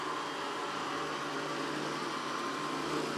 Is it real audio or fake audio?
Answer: real